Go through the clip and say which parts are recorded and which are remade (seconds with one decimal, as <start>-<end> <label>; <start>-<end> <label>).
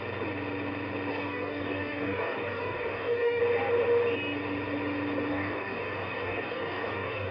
0.0-1.1 recorded; 1.1-3.4 remade; 3.4-5.3 recorded; 5.3-7.3 remade